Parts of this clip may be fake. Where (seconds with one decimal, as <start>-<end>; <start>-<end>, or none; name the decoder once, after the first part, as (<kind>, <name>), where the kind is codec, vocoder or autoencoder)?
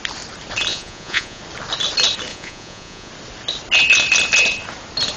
0.7-1.4 (vocoder, Vocos); 2.3-3.1